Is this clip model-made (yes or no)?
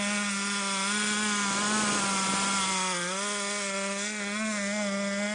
no